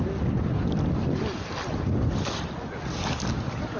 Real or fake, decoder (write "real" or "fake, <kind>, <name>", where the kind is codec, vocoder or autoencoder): real